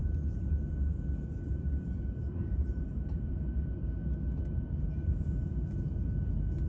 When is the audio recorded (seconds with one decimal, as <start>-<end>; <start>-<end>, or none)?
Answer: 0.0-1.5